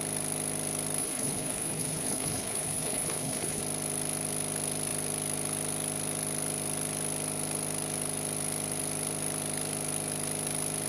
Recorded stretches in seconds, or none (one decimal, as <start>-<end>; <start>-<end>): 0.0-1.0; 3.6-10.9